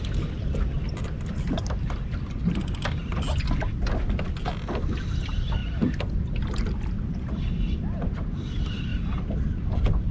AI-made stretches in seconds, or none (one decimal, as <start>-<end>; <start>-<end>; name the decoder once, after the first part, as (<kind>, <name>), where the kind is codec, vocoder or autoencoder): none